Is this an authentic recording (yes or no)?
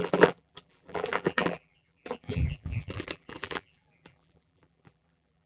no